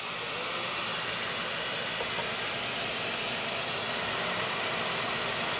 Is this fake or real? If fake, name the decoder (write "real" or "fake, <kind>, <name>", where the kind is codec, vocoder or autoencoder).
real